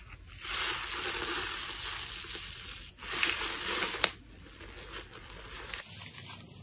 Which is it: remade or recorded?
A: recorded